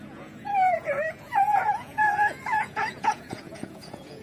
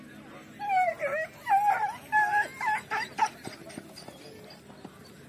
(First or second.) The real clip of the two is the second